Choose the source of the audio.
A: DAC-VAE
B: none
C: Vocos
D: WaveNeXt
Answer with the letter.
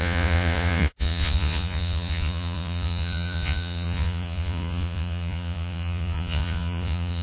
C